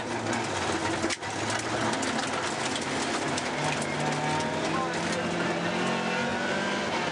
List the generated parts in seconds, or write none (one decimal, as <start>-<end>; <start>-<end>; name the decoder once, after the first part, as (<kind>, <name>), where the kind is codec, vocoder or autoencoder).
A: none